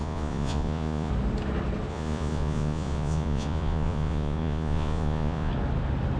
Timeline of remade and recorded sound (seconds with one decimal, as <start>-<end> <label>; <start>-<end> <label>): 0.0-1.1 remade; 1.1-1.9 recorded; 1.9-5.5 remade; 5.5-6.2 recorded